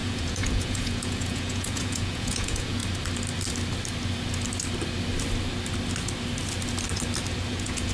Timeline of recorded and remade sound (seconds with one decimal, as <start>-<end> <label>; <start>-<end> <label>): 0.0-2.8 remade; 2.8-7.5 recorded; 7.5-7.9 remade

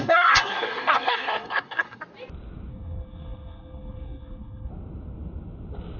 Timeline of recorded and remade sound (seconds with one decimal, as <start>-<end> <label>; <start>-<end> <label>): 0.0-2.0 remade; 2.0-2.7 recorded; 2.7-4.7 remade; 4.7-6.0 recorded

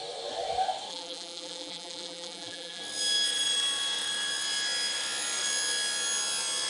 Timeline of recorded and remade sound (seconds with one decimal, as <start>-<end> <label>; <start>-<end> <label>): 0.0-0.9 recorded; 0.9-2.8 remade; 2.8-6.7 recorded

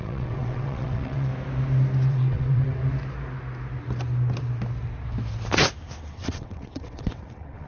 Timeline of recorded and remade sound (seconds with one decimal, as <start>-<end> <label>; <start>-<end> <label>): 0.0-1.3 remade; 1.3-2.1 recorded; 2.1-2.8 remade; 2.8-6.0 recorded; 6.0-7.7 remade